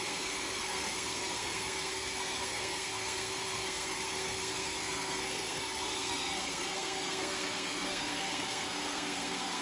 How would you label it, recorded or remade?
remade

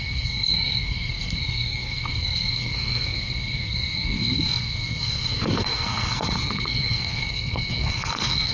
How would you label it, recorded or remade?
remade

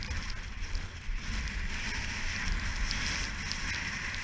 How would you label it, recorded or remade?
recorded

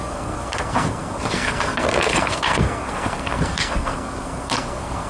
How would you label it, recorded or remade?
remade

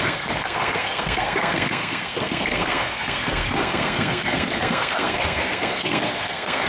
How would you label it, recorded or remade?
remade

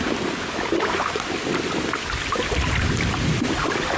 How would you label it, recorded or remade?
recorded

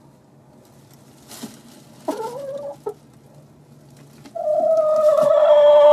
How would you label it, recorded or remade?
recorded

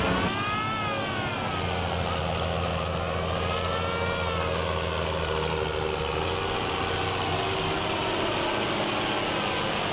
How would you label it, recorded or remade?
recorded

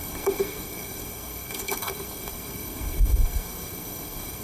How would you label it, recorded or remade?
remade